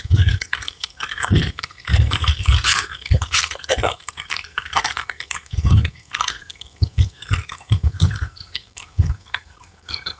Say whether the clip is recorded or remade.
remade